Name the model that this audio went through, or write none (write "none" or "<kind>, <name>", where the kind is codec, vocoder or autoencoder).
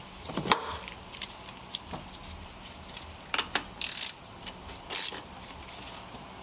vocoder, BigVGAN v2